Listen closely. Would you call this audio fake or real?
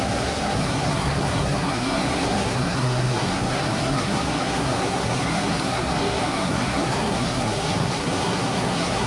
fake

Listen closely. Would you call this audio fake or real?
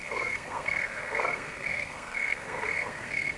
fake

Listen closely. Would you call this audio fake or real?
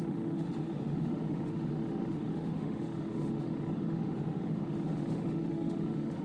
fake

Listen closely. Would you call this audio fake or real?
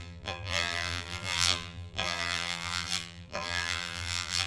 fake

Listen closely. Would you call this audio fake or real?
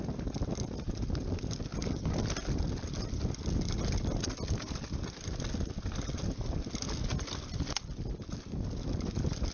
real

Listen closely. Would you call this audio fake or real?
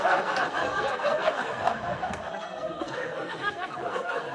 fake